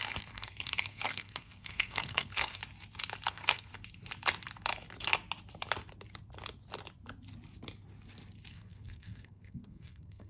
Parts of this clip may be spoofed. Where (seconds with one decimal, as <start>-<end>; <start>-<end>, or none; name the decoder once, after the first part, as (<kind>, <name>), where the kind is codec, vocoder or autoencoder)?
0.0-2.6 (codec, SNAC); 3.3-3.7; 8.5-10.3